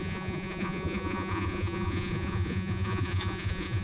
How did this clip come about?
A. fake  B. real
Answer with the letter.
A